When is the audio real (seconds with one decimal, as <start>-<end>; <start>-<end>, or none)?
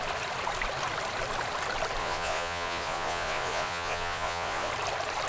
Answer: 0.0-2.0; 4.7-5.3